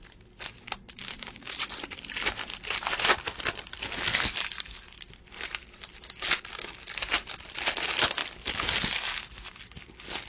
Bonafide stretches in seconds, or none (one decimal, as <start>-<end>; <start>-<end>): 0.0-1.0; 1.7-10.3